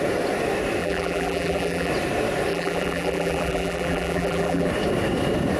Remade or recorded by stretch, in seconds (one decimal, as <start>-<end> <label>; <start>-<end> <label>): 0.0-0.8 recorded; 0.8-1.9 remade; 1.9-2.5 recorded; 2.5-4.7 remade; 4.7-5.6 recorded